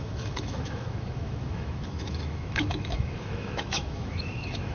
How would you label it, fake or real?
fake